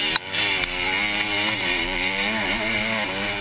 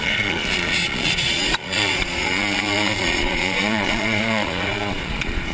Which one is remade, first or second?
second